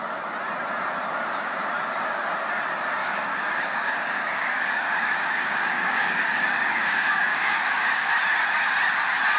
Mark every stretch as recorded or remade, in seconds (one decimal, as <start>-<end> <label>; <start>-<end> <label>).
0.0-3.0 recorded; 3.0-8.1 remade; 8.1-9.4 recorded